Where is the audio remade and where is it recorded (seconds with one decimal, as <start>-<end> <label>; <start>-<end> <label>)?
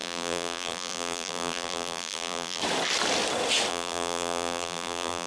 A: 0.0-2.6 remade; 2.6-3.7 recorded; 3.7-5.3 remade